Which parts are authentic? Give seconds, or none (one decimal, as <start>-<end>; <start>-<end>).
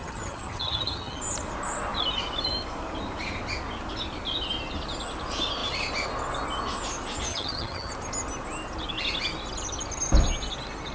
1.2-7.3; 7.9-10.9